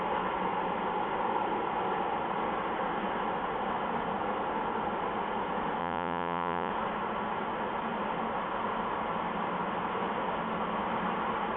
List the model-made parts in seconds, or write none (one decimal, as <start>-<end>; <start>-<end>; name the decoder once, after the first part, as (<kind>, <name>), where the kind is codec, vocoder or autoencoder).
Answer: 5.8-6.7 (vocoder, Vocos)